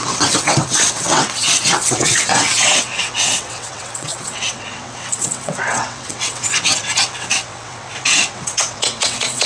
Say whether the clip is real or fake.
fake